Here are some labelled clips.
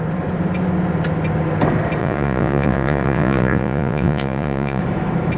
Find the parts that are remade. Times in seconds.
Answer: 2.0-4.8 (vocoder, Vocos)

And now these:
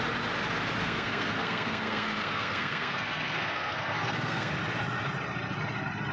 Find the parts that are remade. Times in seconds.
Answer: 0.8-4.5 (codec, SNAC)

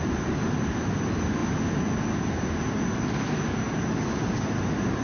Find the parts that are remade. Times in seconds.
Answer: none

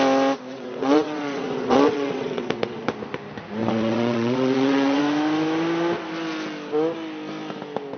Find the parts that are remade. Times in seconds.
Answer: 0.5-2.8 (vocoder, WaveNeXt); 3.6-5.0

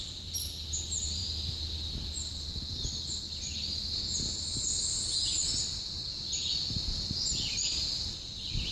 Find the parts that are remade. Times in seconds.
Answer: none

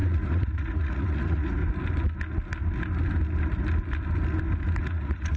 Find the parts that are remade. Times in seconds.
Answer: 0.0-1.6 (vocoder, Vocos); 4.8-5.4

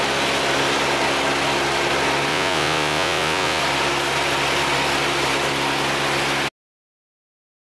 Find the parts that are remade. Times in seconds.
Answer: 2.3-3.6 (vocoder, Vocos)

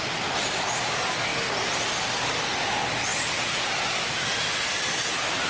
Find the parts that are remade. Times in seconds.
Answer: 1.3-1.8 (vocoder, BigVGAN v2)